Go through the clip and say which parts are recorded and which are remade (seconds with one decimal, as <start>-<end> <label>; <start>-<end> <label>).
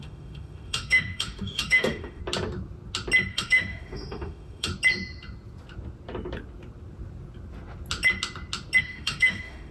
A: 0.0-2.2 remade; 2.2-3.3 recorded; 3.3-4.7 remade; 4.7-8.8 recorded; 8.8-9.7 remade